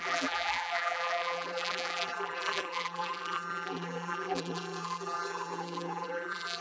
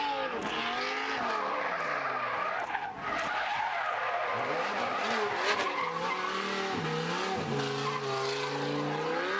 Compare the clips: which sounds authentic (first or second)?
second